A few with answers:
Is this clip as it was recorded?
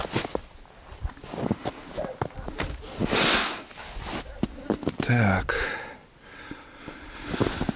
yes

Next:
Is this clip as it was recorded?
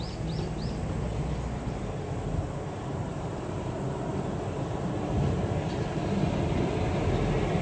yes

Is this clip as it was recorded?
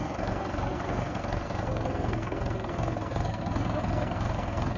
no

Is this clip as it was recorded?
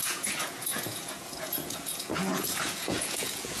no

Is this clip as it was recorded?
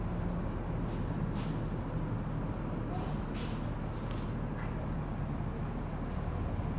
yes